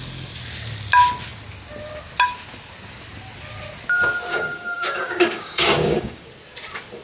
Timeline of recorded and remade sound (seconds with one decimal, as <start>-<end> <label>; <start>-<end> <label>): 0.0-4.3 recorded; 4.3-6.3 remade; 6.3-7.0 recorded